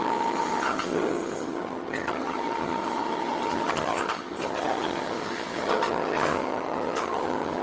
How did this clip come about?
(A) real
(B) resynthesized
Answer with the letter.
B